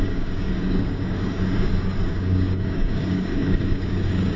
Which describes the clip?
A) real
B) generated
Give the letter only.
B